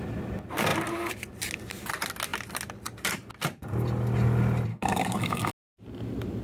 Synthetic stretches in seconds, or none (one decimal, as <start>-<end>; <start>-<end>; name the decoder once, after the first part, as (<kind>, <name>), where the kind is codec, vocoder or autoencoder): 4.7-5.5 (codec, SNAC)